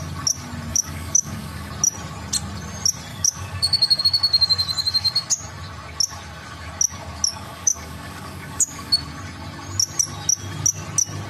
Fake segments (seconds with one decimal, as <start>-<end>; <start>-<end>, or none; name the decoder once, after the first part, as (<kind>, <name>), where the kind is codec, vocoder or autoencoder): 0.7-1.7 (codec, DAC); 3.1-4.0; 7.3-8.9